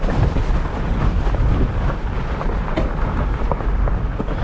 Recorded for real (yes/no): yes